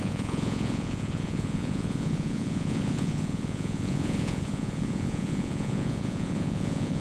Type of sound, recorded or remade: remade